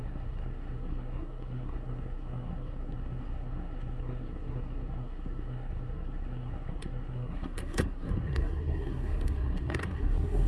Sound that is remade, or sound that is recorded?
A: remade